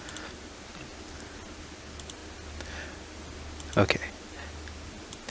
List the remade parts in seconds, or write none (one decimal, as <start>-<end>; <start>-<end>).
none